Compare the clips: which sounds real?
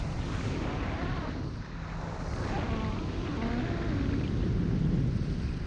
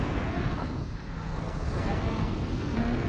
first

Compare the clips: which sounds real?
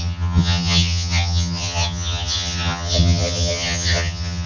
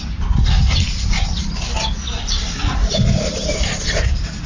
second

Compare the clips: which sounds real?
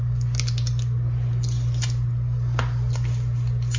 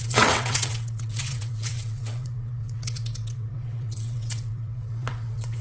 first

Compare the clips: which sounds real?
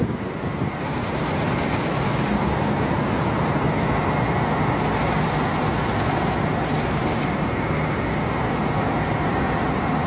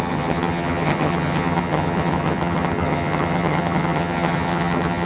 first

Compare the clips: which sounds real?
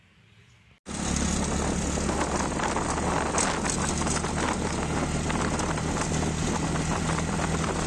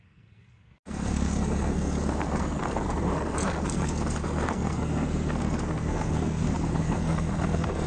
first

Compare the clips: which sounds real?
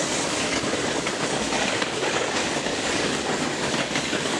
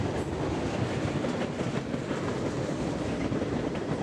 second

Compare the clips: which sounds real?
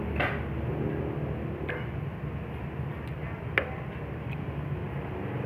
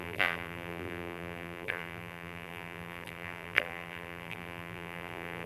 first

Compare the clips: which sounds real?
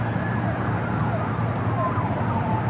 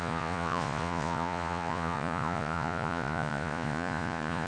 first